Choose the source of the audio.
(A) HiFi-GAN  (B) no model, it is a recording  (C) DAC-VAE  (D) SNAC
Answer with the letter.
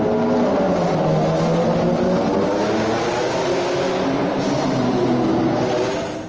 B